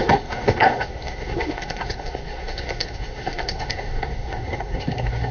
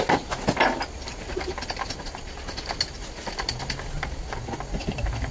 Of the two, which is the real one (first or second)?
second